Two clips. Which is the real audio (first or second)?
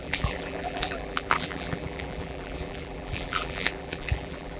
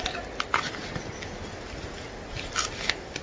second